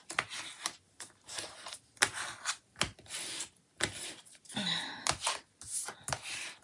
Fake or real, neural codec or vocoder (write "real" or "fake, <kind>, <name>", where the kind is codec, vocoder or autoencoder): real